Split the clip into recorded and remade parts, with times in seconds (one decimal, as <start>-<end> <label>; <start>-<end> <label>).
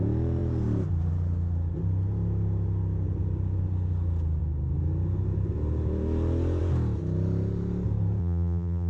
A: 0.0-8.2 recorded; 8.2-8.9 remade